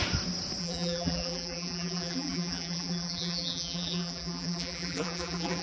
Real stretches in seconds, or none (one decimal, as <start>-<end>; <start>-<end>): 0.0-0.6